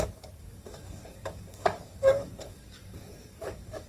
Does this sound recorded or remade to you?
remade